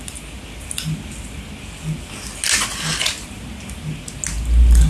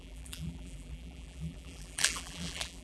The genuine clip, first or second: first